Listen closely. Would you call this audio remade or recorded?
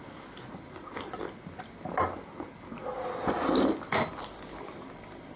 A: recorded